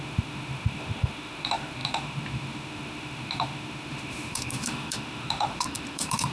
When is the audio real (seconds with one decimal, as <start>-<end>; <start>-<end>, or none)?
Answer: none